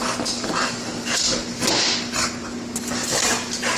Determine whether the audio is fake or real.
real